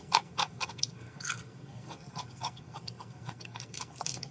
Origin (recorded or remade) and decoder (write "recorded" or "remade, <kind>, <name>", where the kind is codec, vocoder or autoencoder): remade, codec, SNAC